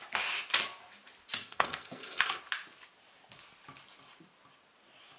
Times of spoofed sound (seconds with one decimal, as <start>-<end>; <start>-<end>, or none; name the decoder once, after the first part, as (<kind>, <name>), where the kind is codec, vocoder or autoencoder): 1.4-2.4 (codec, SNAC)